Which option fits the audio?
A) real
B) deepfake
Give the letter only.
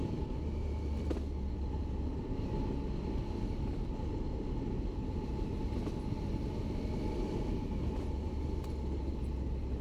A